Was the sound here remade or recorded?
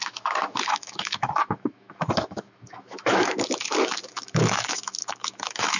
remade